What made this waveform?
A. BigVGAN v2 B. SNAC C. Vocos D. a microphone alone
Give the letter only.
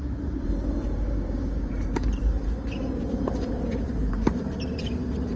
A